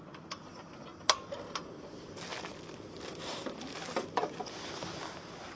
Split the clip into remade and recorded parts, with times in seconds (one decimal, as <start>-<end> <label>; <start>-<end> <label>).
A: 0.0-5.6 recorded